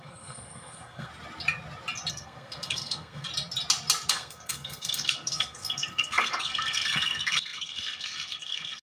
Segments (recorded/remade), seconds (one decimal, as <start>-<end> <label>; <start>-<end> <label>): 0.0-1.1 remade; 1.1-2.1 recorded; 2.1-3.3 remade; 3.3-4.1 recorded; 4.1-8.8 remade